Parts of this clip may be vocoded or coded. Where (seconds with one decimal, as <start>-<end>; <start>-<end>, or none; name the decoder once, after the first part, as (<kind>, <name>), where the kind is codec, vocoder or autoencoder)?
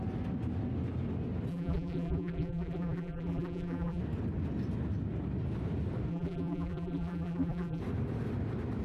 1.5-4.0 (vocoder, BigVGAN v2); 6.1-7.8